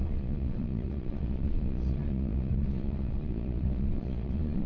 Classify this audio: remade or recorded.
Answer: remade